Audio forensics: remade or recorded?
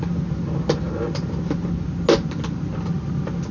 recorded